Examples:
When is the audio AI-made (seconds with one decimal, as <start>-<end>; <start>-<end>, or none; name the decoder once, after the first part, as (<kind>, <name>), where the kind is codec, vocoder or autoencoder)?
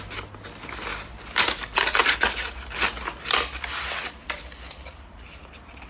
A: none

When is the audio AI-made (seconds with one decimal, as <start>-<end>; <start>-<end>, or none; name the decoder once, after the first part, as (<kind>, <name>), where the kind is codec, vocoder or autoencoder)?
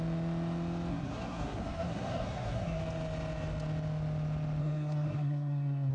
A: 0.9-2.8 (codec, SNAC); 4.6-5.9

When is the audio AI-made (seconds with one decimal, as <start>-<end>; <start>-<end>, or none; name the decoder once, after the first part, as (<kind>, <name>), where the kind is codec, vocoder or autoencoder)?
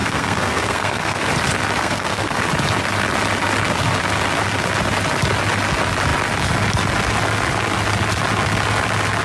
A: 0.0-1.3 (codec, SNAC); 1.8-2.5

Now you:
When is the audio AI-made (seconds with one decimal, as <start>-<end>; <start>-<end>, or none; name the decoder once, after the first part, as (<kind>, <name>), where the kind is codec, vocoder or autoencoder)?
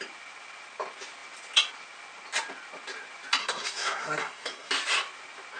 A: 3.4-4.7 (codec, SNAC)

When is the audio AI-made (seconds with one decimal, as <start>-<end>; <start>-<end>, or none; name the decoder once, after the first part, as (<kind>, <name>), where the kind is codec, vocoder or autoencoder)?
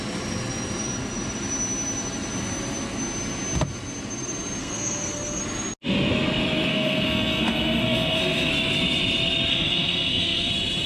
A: 4.6-5.4 (codec, SNAC); 6.7-8.5; 9.5-10.5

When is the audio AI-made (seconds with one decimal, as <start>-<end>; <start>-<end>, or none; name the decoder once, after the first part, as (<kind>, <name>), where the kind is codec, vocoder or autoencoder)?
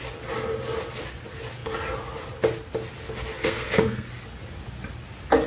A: 3.4-4.1 (codec, SNAC)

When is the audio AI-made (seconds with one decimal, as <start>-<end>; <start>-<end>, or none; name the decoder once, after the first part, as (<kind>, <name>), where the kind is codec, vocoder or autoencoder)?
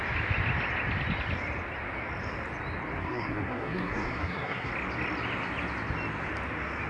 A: 3.0-4.7 (codec, SNAC)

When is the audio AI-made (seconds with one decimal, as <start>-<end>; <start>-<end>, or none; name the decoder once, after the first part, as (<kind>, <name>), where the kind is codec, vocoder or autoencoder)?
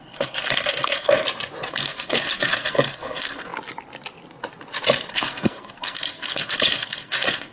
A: 0.0-1.2 (codec, SNAC); 1.7-3.5; 5.1-7.5